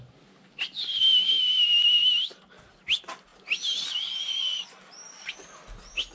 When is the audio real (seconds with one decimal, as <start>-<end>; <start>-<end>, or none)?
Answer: 0.0-6.1